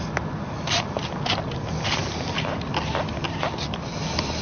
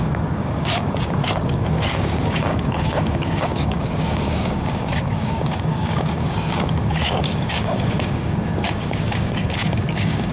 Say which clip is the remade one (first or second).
second